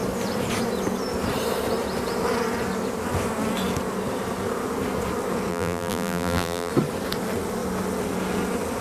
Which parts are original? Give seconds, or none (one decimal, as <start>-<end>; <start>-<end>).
0.0-5.5; 6.7-8.8